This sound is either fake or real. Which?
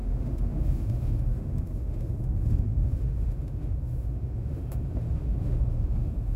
fake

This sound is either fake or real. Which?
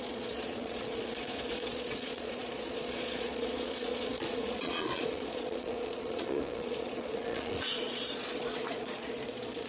fake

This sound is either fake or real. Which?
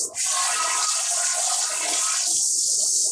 real